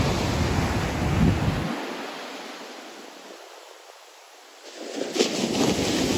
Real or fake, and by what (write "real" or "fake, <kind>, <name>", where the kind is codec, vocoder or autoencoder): real